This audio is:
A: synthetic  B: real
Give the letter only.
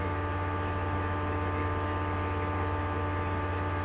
B